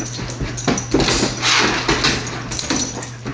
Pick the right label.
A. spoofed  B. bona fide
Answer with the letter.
B